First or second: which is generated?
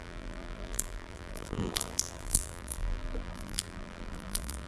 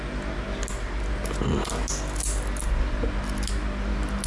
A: first